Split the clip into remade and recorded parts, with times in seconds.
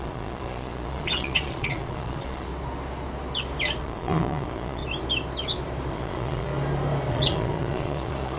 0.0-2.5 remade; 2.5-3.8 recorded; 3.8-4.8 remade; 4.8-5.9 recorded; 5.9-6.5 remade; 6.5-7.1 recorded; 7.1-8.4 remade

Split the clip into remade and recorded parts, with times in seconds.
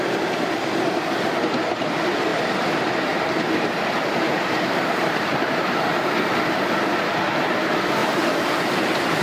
0.0-2.3 recorded; 2.3-6.1 remade; 6.1-8.0 recorded; 8.0-9.2 remade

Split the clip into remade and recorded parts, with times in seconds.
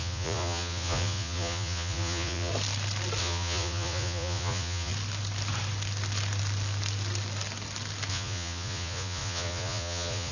0.0-2.5 remade; 2.5-3.2 recorded; 3.2-4.9 remade; 4.9-8.1 recorded; 8.1-10.3 remade